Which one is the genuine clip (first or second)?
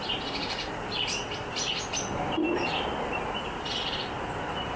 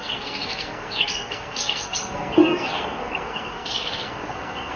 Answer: first